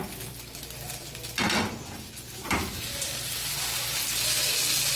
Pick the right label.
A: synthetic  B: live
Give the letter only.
B